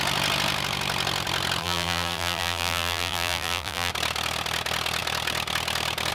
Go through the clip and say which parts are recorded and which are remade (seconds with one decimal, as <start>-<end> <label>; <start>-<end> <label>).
0.0-1.6 recorded; 1.6-3.9 remade; 3.9-6.1 recorded